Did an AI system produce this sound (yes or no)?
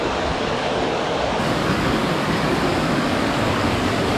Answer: yes